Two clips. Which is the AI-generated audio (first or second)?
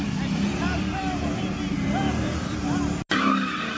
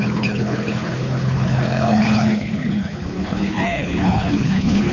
second